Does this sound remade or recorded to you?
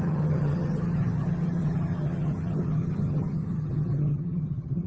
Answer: remade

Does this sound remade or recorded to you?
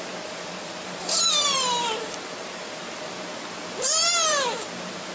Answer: remade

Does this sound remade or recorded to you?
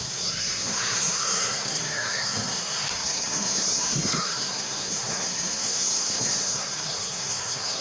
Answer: remade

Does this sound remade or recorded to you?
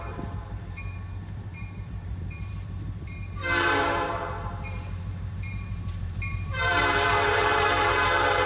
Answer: remade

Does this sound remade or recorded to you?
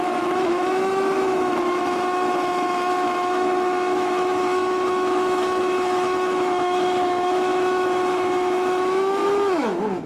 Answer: remade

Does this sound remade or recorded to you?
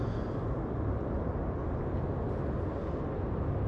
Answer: recorded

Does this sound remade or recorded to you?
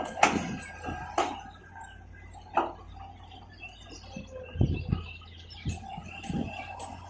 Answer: recorded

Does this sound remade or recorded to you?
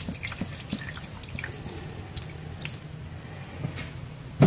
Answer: recorded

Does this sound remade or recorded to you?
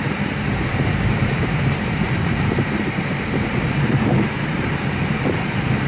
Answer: remade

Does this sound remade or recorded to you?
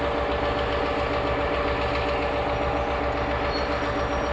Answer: recorded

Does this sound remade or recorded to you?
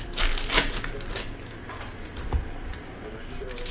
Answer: recorded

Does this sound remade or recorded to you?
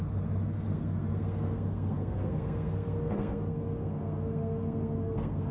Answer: remade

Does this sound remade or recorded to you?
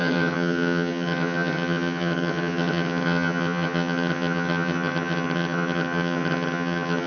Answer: remade